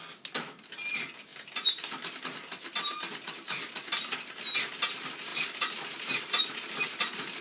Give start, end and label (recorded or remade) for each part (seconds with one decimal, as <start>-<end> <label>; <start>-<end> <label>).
0.0-7.4 recorded